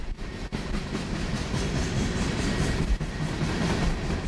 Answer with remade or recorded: recorded